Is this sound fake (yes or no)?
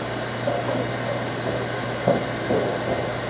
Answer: no